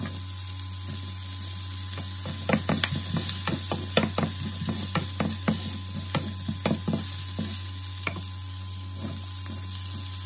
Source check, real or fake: real